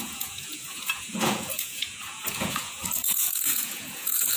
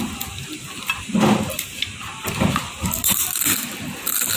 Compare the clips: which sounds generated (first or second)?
first